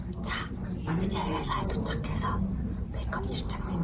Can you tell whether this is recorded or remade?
recorded